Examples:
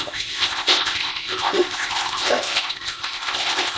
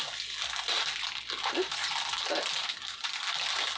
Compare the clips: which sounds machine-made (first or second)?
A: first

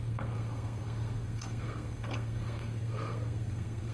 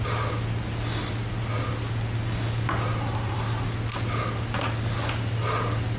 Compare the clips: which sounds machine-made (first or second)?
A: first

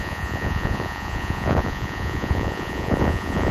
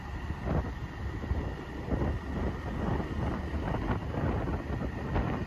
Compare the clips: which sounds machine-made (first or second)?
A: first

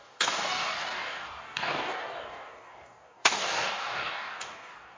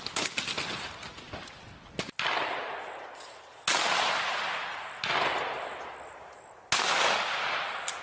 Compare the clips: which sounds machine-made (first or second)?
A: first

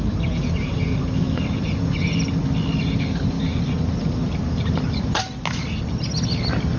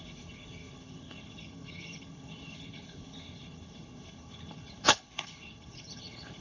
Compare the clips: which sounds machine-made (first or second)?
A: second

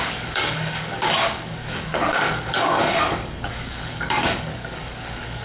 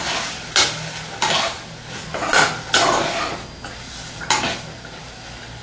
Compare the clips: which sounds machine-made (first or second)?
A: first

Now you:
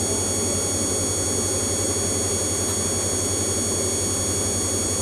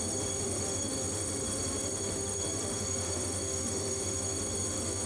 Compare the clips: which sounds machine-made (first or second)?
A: second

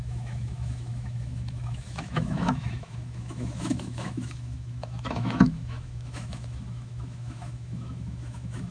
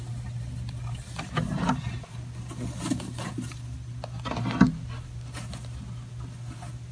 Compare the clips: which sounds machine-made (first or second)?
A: first